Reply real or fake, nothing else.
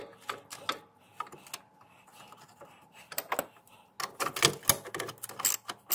real